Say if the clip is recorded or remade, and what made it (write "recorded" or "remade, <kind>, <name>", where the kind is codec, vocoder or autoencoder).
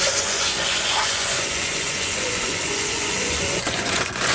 remade, vocoder, Vocos